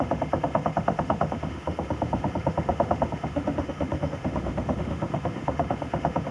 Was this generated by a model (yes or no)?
yes